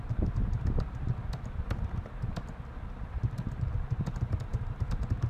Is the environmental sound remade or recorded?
recorded